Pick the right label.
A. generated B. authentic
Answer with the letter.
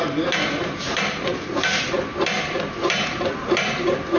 A